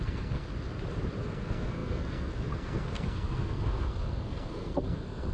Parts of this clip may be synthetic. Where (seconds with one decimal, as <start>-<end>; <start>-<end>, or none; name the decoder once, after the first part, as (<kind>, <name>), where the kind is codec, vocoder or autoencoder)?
0.0-0.5 (codec, SNAC); 1.2-5.3